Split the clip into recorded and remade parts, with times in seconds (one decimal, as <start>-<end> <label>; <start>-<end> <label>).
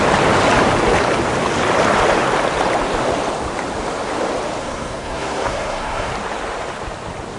0.0-4.6 recorded; 4.6-6.1 remade; 6.1-7.4 recorded